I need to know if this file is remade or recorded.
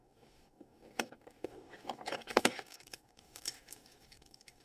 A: remade